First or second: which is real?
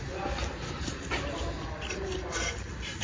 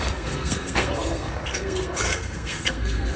first